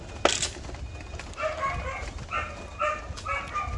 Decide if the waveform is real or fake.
real